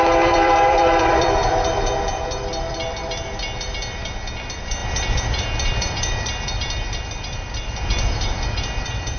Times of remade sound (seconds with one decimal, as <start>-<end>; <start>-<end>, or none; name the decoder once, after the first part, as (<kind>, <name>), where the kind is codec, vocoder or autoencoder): 0.0-9.2 (vocoder, BigVGAN v2)